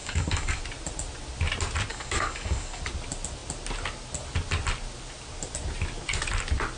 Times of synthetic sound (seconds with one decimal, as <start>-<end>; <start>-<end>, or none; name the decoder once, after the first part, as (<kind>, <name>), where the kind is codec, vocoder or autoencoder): 0.0-0.6 (codec, DAC); 1.9-2.8